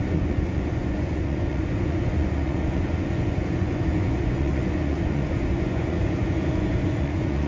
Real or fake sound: fake